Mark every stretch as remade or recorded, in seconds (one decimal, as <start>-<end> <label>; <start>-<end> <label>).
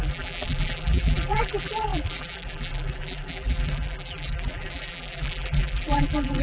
0.0-6.4 remade